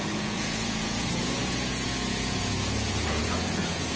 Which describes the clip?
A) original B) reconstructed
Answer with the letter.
B